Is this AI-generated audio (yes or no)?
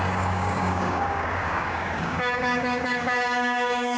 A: yes